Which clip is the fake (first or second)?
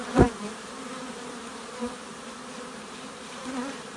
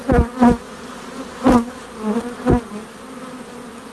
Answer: first